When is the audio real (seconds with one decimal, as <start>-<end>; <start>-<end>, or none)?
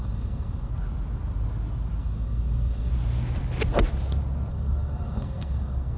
0.7-2.0; 2.9-4.5